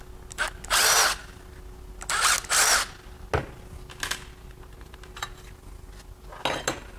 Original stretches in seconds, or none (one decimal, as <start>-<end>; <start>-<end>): 0.0-7.0